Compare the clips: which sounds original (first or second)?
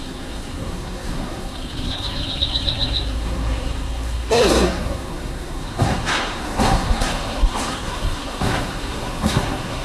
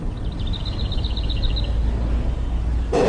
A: second